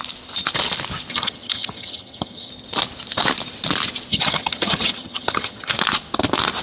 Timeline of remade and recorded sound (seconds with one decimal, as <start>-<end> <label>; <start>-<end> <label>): 0.0-1.1 recorded; 1.1-2.5 remade; 2.5-4.1 recorded; 4.1-5.7 remade; 5.7-6.6 recorded